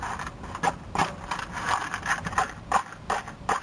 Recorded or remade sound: recorded